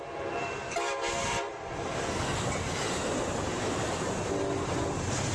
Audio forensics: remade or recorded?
remade